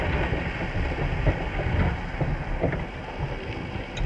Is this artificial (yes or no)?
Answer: no